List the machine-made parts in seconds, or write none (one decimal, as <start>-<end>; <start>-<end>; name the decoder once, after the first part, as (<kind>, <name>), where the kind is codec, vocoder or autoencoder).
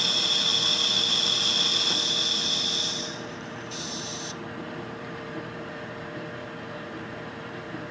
0.0-0.5 (vocoder, BigVGAN v2); 3.0-4.1; 4.6-7.9